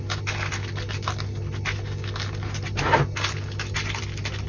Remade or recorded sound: recorded